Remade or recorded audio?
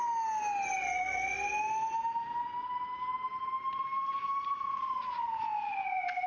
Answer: recorded